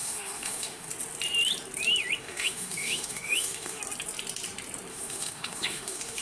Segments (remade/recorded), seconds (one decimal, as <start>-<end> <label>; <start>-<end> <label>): 0.0-0.9 remade; 0.9-2.2 recorded; 2.2-3.8 remade; 3.8-4.9 recorded; 4.9-6.2 remade